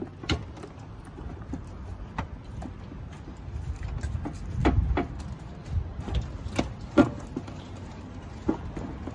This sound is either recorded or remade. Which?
recorded